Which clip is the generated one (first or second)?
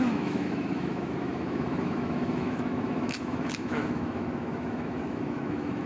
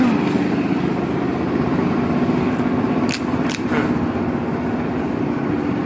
first